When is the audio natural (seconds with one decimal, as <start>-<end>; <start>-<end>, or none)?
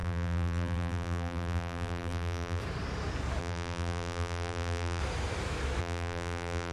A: 2.6-3.4; 5.0-5.8